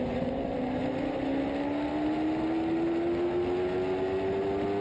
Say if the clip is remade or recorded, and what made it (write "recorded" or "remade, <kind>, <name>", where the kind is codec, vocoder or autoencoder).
recorded